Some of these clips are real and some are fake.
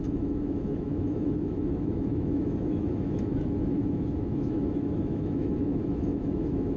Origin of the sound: fake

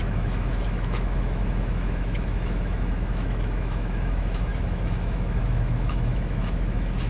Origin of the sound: fake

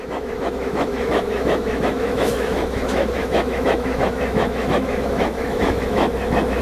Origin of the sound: fake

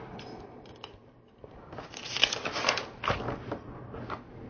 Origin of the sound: real